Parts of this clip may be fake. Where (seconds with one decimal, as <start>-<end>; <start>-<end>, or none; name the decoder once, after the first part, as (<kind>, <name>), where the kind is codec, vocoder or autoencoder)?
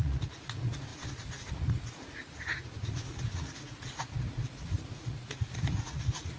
0.0-6.4 (vocoder, Vocos)